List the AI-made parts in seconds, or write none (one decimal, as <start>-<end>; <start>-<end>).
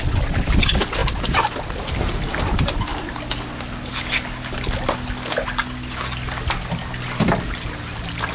none